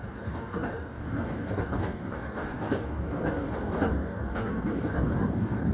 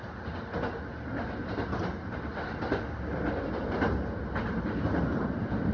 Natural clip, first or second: second